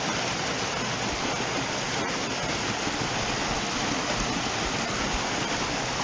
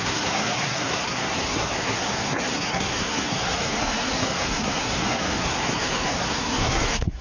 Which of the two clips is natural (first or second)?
first